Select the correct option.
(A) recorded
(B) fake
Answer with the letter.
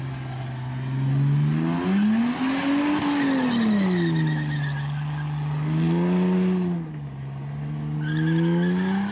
A